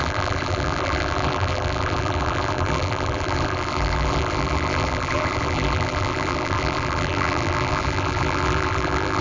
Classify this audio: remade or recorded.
remade